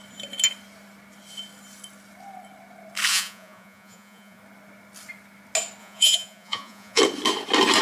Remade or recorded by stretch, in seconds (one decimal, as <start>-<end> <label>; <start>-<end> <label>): 0.0-3.1 recorded; 3.1-4.4 remade; 4.4-5.8 recorded; 5.8-7.0 remade; 7.0-7.8 recorded